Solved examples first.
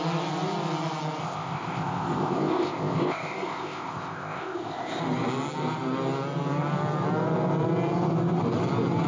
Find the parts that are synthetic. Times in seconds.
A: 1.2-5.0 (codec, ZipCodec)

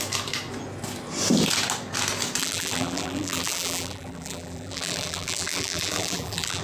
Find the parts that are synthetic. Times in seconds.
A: 2.4-6.6 (vocoder, BigVGAN v2)

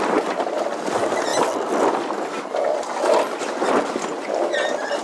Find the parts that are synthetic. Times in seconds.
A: none